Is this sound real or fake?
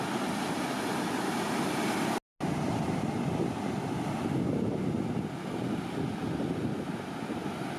real